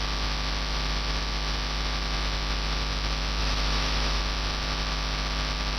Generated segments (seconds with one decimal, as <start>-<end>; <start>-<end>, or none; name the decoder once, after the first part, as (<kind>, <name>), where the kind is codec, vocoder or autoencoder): 3.4-4.2 (autoencoder, DAC-VAE)